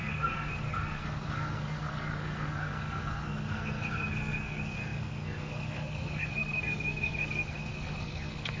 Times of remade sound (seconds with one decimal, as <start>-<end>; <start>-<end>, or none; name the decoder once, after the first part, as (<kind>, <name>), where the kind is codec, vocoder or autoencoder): 0.0-8.6 (codec, SNAC)